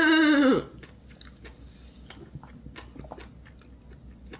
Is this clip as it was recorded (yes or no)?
yes